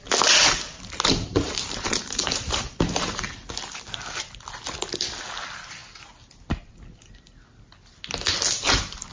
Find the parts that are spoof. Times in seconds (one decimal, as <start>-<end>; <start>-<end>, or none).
1.1-3.2